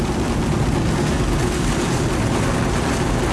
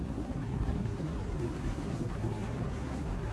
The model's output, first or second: second